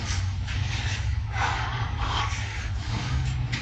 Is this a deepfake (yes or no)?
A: yes